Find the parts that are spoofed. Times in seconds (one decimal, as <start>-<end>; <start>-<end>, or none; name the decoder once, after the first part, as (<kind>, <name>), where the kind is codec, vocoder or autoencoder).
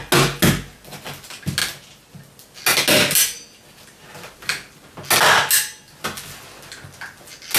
none